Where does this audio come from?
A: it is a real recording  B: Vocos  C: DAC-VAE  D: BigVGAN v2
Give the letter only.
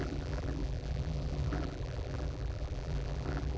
D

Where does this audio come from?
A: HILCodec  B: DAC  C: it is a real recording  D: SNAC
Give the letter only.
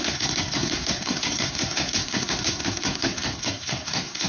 D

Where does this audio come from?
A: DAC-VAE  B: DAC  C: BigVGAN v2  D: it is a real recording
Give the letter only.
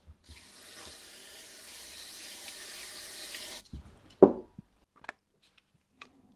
C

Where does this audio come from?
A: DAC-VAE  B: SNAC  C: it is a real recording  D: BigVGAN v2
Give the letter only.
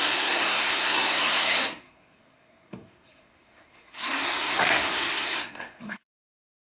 B